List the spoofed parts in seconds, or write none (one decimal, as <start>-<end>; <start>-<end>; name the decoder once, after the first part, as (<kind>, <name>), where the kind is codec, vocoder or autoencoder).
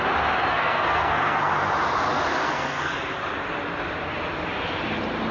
0.5-1.5 (codec, SNAC); 2.4-2.9